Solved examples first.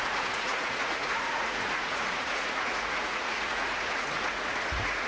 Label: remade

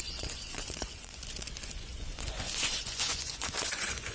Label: remade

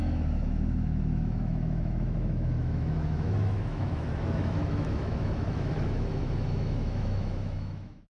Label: remade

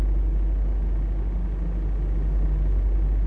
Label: recorded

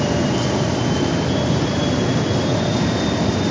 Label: recorded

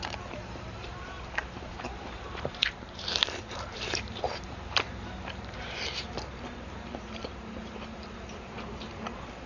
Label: remade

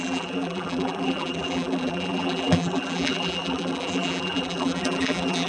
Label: remade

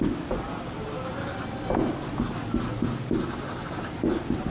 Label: recorded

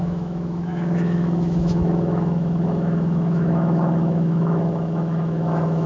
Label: remade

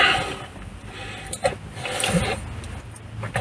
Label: recorded